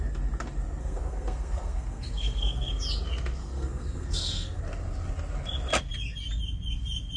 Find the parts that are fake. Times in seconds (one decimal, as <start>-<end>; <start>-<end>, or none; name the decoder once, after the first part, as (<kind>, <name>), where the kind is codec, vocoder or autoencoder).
0.8-2.7 (codec, SNAC); 3.4-4.6

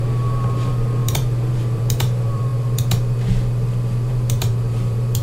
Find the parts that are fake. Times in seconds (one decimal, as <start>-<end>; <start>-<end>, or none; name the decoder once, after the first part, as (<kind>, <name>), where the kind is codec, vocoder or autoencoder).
0.0-2.5 (vocoder, BigVGAN v2); 4.1-5.2

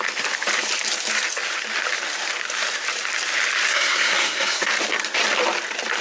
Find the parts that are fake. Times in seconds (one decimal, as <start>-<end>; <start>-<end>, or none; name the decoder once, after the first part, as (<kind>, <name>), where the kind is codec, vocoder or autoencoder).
3.7-4.7 (codec, SNAC)

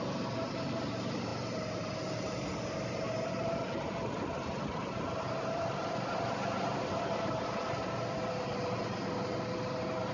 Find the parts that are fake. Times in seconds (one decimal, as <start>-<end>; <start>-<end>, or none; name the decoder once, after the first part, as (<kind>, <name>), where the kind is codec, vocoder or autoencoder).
none

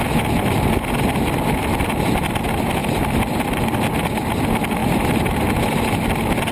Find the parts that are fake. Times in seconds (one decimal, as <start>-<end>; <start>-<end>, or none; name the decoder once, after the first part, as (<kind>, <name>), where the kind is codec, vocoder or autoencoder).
2.8-3.4 (vocoder, BigVGAN v2); 4.8-5.6

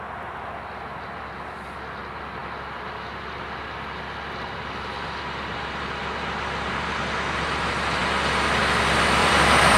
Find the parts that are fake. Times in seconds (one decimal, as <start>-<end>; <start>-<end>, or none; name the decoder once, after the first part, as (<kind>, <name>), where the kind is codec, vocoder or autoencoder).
9.2-9.8 (vocoder, BigVGAN v2)

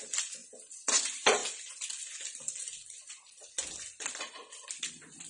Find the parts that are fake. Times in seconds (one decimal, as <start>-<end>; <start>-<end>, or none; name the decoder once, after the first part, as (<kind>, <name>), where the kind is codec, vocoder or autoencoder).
none

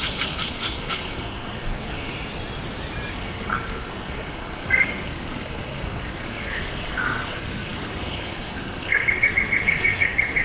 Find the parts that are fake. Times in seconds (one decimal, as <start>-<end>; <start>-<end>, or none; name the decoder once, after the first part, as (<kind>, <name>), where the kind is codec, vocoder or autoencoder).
0.0-2.1 (codec, SNAC); 3.1-10.4